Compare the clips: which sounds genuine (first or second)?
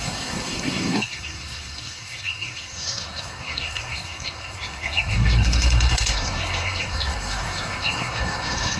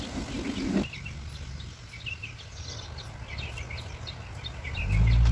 second